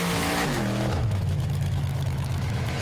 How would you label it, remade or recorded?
remade